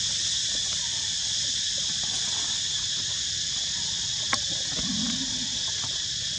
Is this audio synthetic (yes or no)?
no